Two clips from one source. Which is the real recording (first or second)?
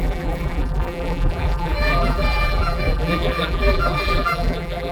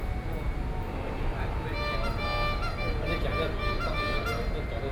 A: second